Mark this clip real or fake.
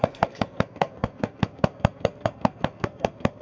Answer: fake